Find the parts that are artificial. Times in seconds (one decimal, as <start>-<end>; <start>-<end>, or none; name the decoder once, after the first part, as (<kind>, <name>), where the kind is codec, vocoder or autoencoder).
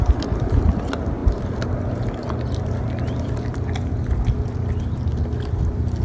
none